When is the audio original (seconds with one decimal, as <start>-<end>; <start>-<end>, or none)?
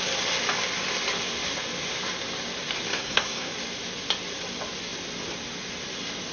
0.0-2.9; 3.5-6.3